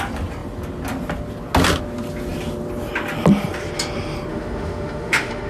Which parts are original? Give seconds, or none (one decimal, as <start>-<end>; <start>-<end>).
0.0-4.3